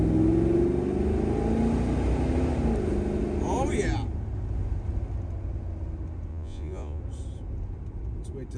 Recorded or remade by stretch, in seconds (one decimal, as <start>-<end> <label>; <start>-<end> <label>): 0.0-6.3 recorded; 6.3-7.0 remade; 7.0-8.6 recorded